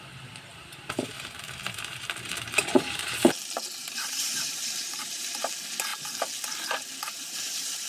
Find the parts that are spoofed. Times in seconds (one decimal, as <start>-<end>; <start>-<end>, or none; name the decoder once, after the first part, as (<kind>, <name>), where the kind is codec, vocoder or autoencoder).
0.5-3.3 (vocoder, BigVGAN v2); 3.8-5.4